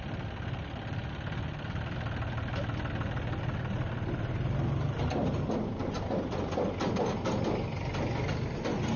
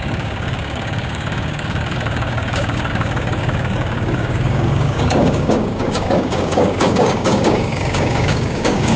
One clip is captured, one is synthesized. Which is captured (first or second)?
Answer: first